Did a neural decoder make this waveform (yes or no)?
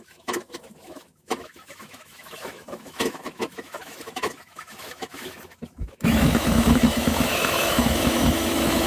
yes